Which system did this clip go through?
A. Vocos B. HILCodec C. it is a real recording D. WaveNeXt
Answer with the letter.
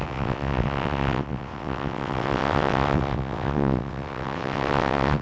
D